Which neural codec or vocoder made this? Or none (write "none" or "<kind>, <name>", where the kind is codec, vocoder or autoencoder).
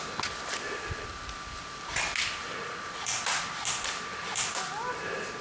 none